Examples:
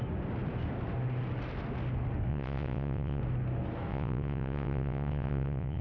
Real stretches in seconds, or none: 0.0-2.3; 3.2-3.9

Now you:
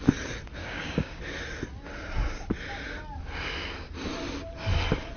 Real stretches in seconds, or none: 0.0-0.6; 1.2-5.2

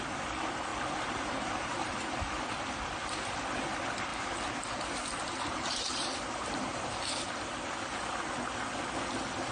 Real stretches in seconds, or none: 0.0-0.7; 2.4-4.1; 7.0-9.5